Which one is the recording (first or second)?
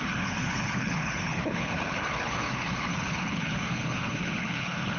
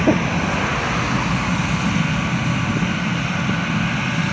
second